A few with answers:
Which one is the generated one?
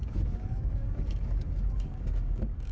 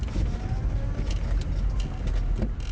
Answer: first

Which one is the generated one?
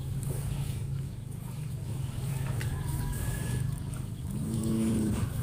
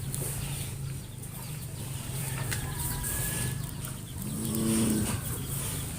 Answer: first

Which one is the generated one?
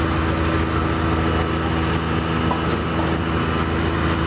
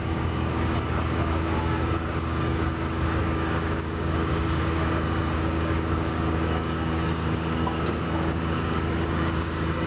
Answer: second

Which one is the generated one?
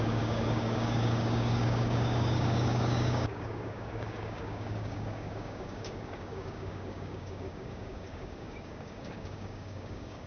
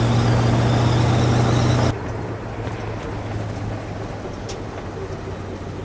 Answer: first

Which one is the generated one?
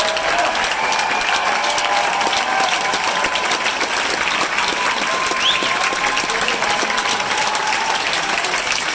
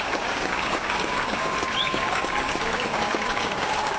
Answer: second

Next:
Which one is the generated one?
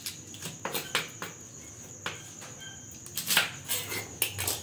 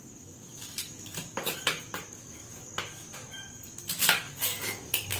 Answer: second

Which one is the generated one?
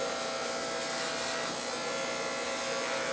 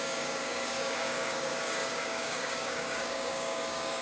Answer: second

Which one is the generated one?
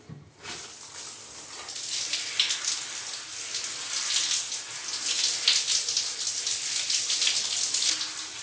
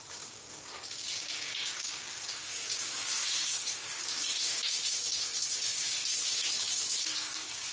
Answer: second